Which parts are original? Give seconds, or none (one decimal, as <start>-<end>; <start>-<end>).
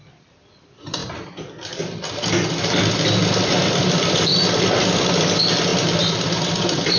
1.0-5.2; 5.7-6.5